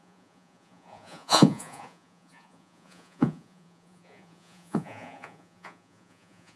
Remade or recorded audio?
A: remade